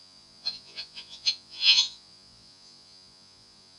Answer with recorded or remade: remade